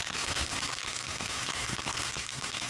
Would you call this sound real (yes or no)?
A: no